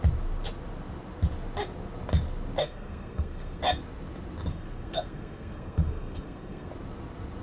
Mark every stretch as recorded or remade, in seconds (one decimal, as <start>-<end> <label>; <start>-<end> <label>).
0.0-2.6 recorded; 2.6-3.6 remade; 3.6-4.5 recorded; 4.5-6.7 remade; 6.7-7.4 recorded